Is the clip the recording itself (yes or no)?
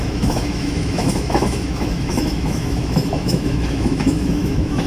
no